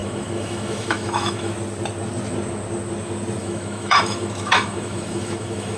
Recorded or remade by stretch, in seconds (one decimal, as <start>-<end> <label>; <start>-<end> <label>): 0.0-1.5 remade; 1.5-3.4 recorded; 3.4-5.8 remade